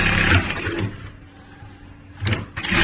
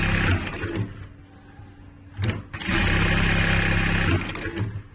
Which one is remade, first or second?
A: first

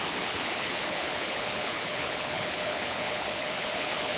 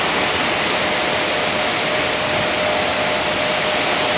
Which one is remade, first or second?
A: first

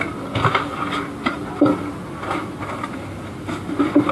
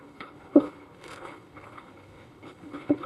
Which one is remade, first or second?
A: second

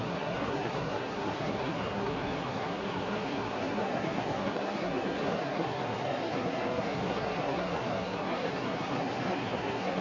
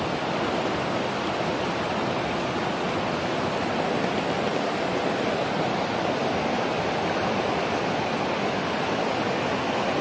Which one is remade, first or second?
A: first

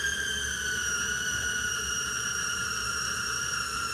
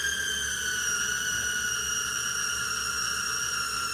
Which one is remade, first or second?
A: first